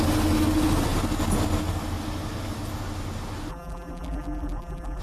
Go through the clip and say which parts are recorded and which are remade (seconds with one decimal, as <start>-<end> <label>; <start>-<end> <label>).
0.0-3.5 recorded; 3.5-5.0 remade